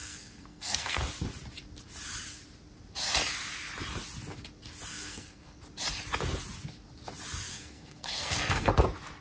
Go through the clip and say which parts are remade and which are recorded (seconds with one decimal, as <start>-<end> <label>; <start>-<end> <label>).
0.0-1.0 remade; 1.0-4.9 recorded; 4.9-5.6 remade; 5.6-7.5 recorded; 7.5-8.7 remade; 8.7-9.2 recorded